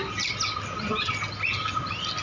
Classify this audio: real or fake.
real